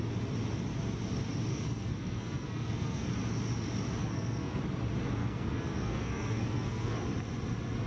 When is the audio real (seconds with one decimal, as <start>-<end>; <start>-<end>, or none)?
0.0-1.5; 3.1-4.0; 4.6-5.2; 7.0-7.9